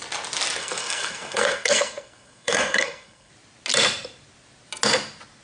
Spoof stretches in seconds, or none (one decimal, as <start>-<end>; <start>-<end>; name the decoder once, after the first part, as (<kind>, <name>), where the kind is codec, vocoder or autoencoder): 0.6-3.3 (codec, SNAC)